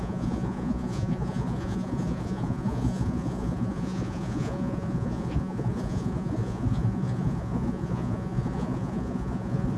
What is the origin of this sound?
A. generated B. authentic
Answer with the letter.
A